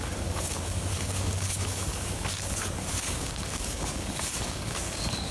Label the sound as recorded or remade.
remade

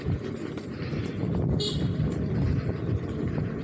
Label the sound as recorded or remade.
recorded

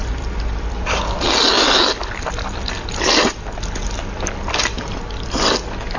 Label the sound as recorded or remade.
recorded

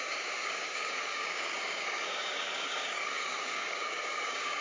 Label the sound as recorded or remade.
remade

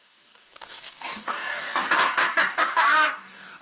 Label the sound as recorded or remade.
remade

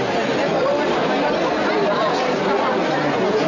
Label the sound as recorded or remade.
recorded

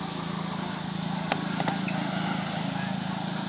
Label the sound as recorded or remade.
recorded